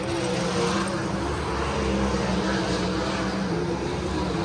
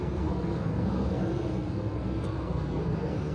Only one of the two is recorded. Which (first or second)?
first